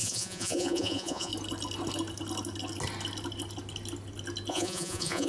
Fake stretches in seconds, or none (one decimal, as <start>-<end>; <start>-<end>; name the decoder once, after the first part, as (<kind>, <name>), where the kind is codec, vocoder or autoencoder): 0.0-1.3 (vocoder, Vocos); 4.5-5.3